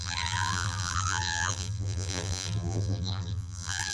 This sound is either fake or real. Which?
fake